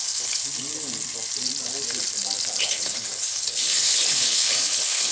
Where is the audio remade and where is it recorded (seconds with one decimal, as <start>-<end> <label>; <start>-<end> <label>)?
0.0-0.4 remade; 0.4-2.6 recorded; 2.6-5.1 remade